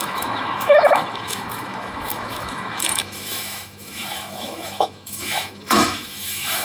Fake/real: fake